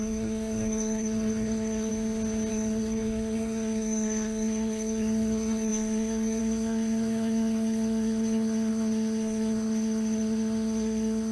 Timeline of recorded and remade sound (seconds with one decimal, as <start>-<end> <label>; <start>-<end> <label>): 0.0-1.9 remade; 1.9-2.5 recorded; 2.5-11.3 remade